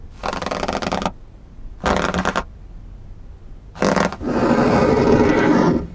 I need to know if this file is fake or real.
real